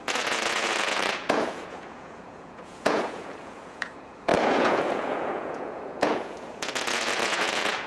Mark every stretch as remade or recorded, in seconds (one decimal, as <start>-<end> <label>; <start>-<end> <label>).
0.0-7.9 remade